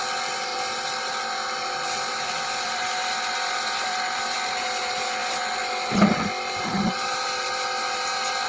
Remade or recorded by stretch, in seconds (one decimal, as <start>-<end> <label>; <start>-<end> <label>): 0.0-5.6 remade; 5.6-6.6 recorded; 6.6-8.5 remade